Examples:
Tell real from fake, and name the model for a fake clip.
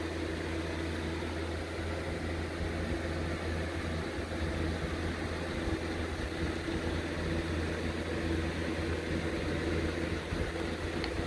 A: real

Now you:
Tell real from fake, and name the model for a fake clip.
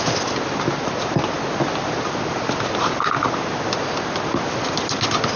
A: real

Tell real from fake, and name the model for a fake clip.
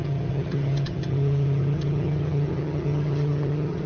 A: fake, vocoder, HiFi-GAN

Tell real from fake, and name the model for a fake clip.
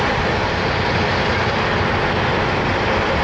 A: real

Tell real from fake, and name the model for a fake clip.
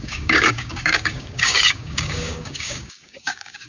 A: fake, codec, DAC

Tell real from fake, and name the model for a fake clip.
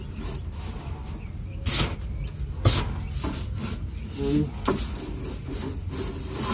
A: real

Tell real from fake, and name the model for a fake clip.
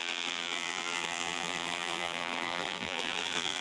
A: fake, vocoder, BigVGAN v2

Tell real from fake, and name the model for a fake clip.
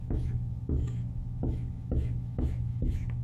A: fake, autoencoder, DAC-VAE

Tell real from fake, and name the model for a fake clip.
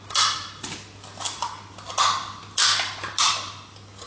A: real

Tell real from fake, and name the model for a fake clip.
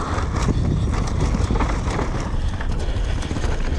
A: real